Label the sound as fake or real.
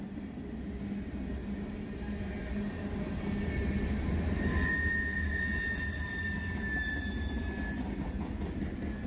real